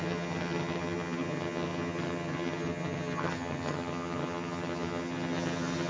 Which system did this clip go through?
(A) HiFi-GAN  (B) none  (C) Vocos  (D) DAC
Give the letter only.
A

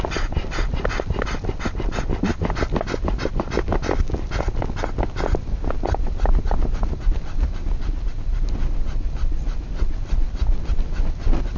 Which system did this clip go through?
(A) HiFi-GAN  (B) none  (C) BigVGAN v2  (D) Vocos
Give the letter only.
B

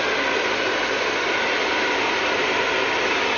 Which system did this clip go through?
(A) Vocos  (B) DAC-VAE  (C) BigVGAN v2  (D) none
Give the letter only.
D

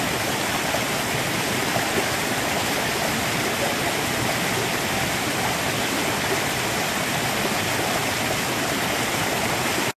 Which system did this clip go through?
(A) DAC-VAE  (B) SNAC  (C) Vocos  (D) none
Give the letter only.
D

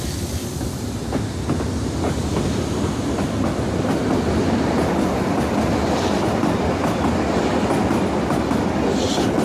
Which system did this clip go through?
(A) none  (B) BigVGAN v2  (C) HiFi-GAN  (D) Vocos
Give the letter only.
A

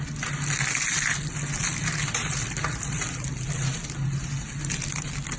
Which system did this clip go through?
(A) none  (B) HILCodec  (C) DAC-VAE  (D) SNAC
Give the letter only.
A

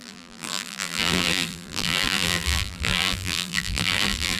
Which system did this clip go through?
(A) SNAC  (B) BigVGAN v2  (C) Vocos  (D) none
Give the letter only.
B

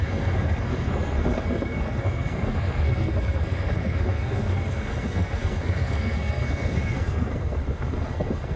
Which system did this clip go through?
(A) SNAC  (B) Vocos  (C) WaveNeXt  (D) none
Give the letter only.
A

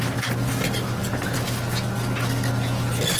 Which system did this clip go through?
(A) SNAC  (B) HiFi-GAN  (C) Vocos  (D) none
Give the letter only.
D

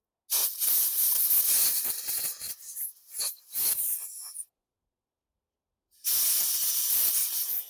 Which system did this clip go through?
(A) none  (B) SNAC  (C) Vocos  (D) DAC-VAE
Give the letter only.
A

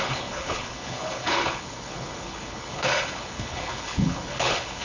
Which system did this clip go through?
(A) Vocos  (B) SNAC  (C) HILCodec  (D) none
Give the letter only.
C